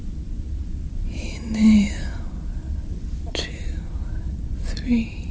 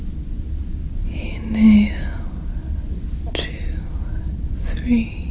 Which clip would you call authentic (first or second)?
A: second